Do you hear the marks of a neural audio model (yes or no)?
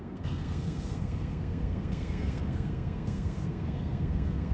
yes